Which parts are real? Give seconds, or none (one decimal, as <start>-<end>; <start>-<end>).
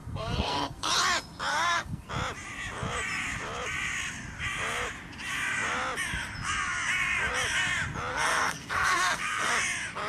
0.9-1.5; 2.1-8.1; 9.5-10.1